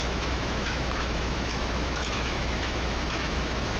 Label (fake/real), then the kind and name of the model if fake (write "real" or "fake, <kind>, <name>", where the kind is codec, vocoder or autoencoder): fake, autoencoder, DAC-VAE